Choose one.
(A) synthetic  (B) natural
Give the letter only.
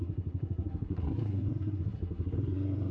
A